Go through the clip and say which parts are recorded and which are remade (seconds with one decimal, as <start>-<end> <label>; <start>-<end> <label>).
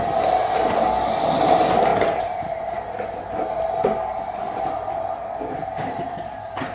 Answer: 0.0-6.7 recorded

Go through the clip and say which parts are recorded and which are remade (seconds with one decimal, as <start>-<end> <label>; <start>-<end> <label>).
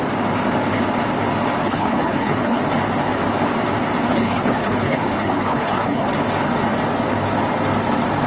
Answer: 0.0-1.6 recorded; 1.6-2.6 remade; 2.6-4.1 recorded; 4.1-6.1 remade; 6.1-8.3 recorded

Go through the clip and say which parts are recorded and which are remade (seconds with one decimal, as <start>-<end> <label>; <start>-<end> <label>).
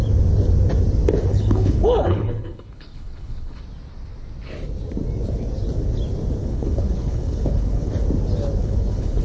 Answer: 0.0-1.3 recorded; 1.3-3.6 remade; 3.6-6.4 recorded; 6.4-7.9 remade; 7.9-8.6 recorded; 8.6-9.2 remade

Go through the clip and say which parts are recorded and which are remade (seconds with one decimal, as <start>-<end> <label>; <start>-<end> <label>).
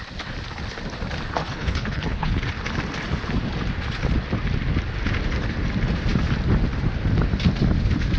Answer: 0.0-1.4 recorded; 1.4-2.4 remade; 2.4-8.2 recorded